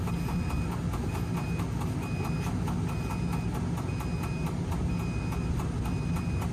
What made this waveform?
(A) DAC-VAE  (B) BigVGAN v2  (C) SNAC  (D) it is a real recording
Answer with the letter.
D